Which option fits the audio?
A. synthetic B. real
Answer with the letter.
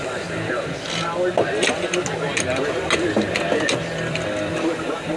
B